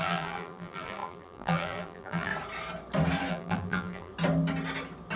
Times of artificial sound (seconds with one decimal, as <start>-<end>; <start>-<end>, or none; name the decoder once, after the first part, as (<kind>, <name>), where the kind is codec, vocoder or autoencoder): 0.0-2.3 (vocoder, BigVGAN v2); 3.3-4.1